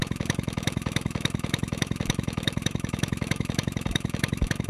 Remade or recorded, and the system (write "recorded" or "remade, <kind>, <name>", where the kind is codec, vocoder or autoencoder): remade, autoencoder, DAC-VAE